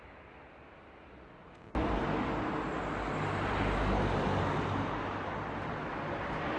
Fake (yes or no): no